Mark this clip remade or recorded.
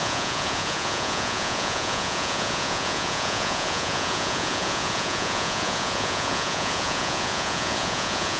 remade